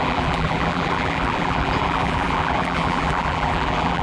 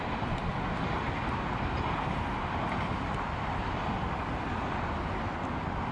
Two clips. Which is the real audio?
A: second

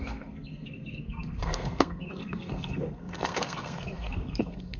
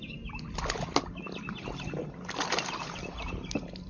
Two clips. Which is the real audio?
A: second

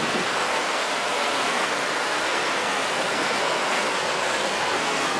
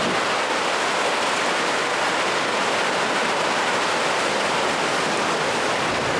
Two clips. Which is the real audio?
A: second